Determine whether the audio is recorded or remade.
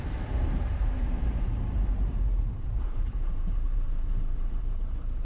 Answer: remade